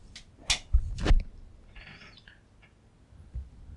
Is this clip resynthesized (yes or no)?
no